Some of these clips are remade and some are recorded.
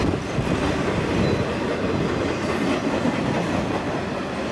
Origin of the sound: remade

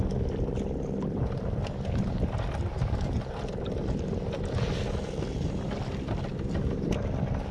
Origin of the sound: recorded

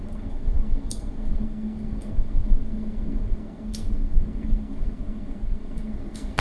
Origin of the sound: remade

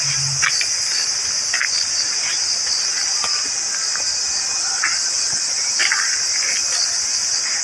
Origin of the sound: recorded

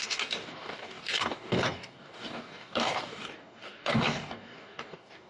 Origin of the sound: remade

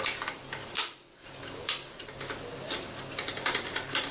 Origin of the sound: recorded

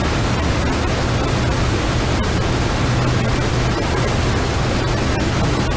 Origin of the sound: recorded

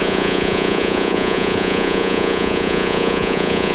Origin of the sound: remade